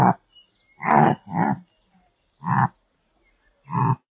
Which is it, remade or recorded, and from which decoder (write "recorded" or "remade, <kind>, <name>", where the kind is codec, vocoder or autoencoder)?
recorded